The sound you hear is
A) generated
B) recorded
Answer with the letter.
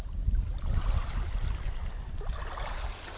B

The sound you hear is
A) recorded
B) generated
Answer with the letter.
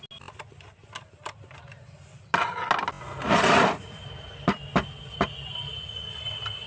A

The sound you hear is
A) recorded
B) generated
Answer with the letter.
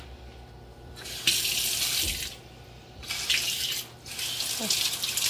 A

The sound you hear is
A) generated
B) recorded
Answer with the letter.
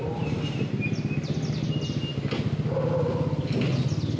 B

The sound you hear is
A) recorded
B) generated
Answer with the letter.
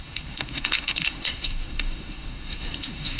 B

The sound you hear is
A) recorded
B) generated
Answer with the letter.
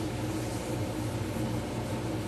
A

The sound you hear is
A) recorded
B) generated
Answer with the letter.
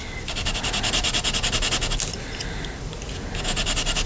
A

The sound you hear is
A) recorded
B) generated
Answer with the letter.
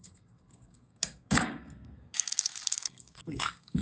B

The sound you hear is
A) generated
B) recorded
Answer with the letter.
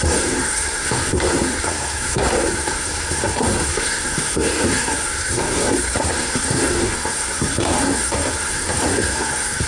A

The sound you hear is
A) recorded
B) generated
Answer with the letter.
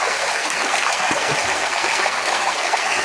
B